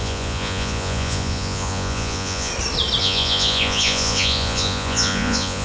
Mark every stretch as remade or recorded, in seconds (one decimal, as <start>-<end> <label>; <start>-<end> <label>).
0.0-2.5 remade; 2.5-3.0 recorded; 3.0-5.6 remade